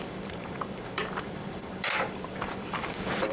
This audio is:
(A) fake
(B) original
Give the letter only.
A